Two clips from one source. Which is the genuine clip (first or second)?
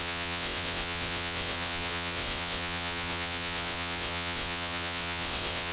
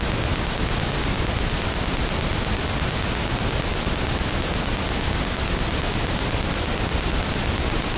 second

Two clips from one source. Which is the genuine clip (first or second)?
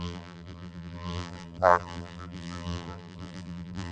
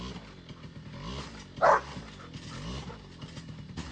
second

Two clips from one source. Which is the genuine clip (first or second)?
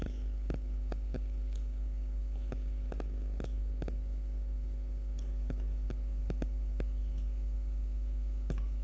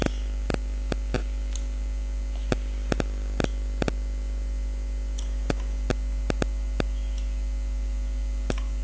second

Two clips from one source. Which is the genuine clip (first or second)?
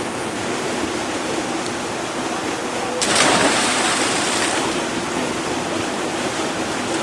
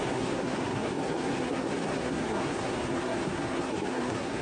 first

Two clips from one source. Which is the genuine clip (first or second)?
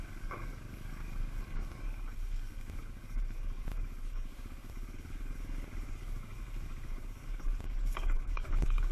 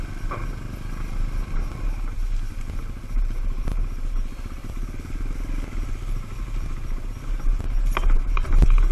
second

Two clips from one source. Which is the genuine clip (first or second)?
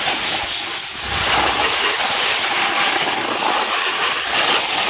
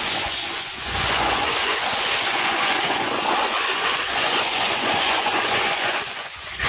first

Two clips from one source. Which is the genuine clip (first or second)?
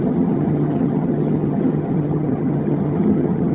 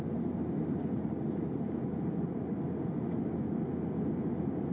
second